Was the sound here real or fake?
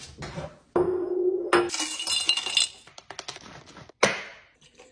real